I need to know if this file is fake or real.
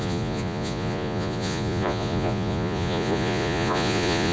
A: fake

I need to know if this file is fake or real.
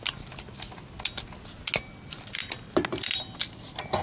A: real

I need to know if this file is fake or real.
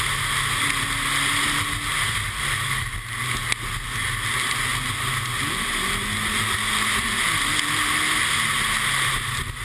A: real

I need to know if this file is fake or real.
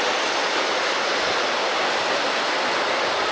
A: real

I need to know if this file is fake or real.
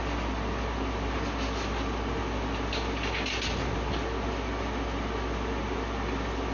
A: real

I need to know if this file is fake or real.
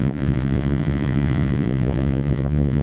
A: fake